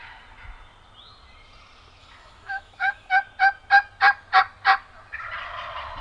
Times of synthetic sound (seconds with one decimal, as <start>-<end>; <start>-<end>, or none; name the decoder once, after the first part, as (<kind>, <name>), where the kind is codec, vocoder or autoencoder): 2.0-3.1 (autoencoder, DAC-VAE)